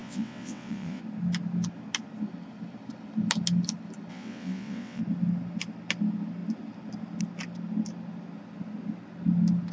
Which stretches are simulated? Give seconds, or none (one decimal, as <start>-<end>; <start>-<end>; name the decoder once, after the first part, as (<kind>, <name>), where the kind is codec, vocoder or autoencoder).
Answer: 0.0-1.0 (vocoder, WaveNeXt); 4.1-5.0